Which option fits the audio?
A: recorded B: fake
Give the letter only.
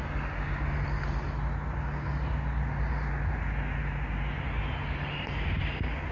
A